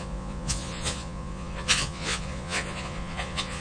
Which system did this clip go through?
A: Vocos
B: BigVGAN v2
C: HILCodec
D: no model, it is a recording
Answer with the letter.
A